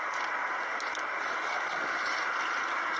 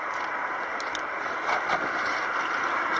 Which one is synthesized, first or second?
second